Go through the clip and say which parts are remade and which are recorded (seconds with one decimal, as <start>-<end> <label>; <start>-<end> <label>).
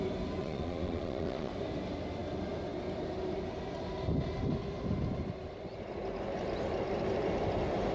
0.0-0.4 recorded; 0.4-1.5 remade; 1.5-7.9 recorded